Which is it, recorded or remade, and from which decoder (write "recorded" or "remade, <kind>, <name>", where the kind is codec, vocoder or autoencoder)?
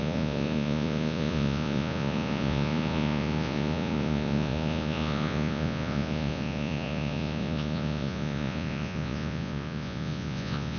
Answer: remade, vocoder, Vocos